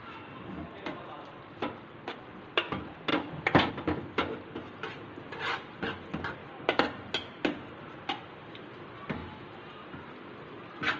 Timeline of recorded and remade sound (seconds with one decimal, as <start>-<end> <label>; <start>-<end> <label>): 0.0-3.1 recorded; 3.1-3.7 remade; 3.7-6.4 recorded; 6.4-7.4 remade; 7.4-9.2 recorded; 9.2-10.1 remade; 10.1-11.0 recorded